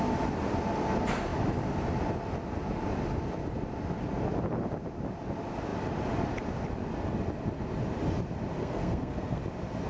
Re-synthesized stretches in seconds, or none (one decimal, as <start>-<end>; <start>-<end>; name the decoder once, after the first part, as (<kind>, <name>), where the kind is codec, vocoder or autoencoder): 8.6-9.4 (codec, SNAC)